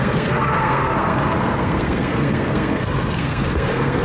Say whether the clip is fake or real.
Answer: fake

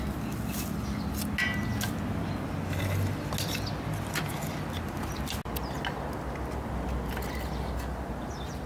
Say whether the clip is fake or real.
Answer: real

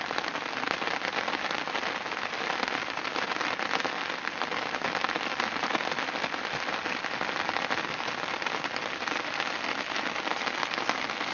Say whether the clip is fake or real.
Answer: real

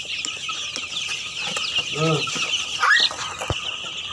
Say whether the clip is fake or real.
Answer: real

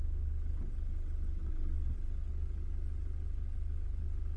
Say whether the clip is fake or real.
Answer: real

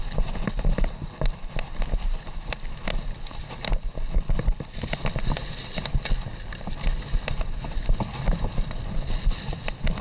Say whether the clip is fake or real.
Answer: real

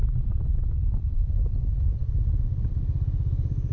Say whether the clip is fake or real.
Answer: real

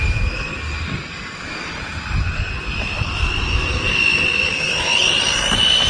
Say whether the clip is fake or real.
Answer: real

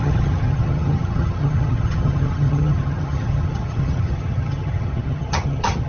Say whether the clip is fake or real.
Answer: fake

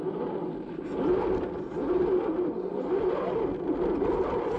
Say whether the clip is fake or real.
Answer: real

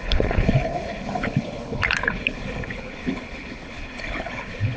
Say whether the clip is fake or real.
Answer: fake